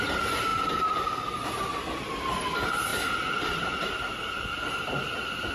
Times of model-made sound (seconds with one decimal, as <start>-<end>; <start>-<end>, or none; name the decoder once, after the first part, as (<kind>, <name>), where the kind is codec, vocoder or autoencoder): 0.5-1.3 (vocoder, BigVGAN v2); 2.9-3.9